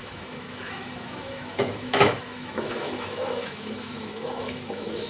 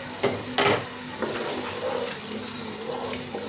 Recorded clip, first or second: second